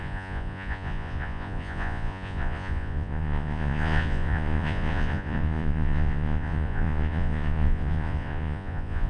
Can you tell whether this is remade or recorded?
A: remade